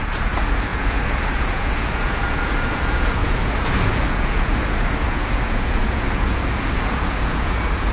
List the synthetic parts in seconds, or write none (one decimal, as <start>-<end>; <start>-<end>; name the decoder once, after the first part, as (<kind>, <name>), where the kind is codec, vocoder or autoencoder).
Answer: 0.0-7.9 (vocoder, Vocos)